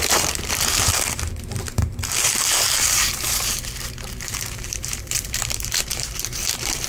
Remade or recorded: remade